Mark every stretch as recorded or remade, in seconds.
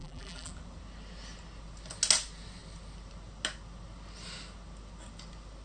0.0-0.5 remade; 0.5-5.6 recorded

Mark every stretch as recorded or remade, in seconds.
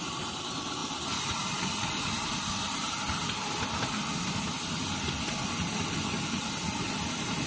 0.0-7.5 recorded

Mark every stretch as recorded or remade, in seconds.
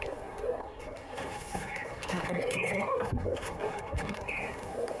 0.0-5.0 remade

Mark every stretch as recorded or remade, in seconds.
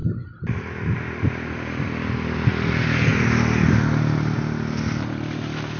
0.0-5.8 recorded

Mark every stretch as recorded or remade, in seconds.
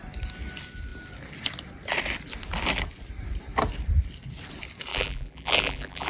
0.0-4.9 recorded; 4.9-6.1 remade